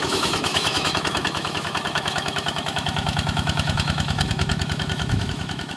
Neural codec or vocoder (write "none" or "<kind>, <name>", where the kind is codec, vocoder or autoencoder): autoencoder, DAC-VAE